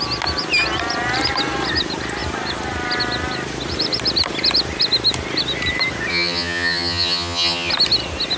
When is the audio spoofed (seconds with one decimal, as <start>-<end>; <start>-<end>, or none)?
6.1-7.7